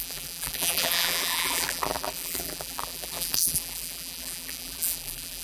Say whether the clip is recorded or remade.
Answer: remade